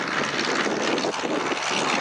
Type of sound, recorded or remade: recorded